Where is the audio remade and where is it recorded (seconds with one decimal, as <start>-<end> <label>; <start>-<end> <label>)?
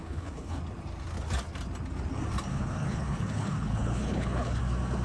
0.0-0.6 remade; 0.6-2.5 recorded; 2.5-4.6 remade; 4.6-5.0 recorded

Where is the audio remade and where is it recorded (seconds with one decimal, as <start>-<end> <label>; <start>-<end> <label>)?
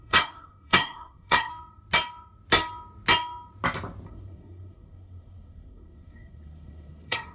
0.0-1.5 remade; 1.5-4.1 recorded; 4.1-7.3 remade